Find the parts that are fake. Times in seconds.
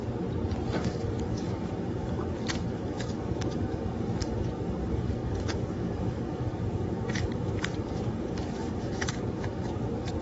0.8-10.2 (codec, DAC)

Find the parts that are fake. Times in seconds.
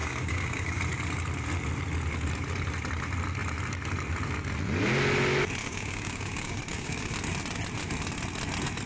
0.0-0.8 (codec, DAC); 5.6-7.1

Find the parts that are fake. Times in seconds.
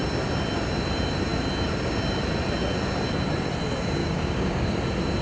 4.0-4.8 (codec, DAC)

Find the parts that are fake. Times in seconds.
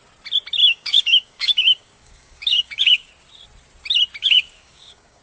0.6-3.1 (codec, DAC); 4.2-5.2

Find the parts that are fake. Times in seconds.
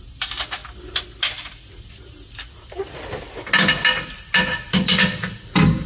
none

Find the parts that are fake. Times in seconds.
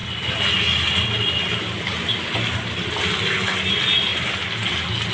none